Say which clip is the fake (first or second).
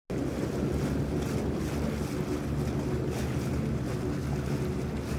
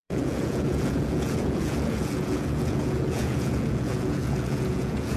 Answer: second